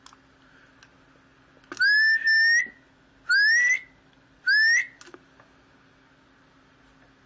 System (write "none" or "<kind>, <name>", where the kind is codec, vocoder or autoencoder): none